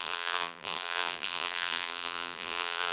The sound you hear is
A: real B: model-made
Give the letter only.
B